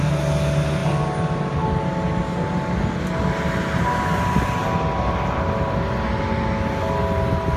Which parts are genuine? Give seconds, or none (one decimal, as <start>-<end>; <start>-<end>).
0.0-7.6